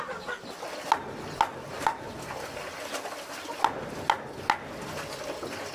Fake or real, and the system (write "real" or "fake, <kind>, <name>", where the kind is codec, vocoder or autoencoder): real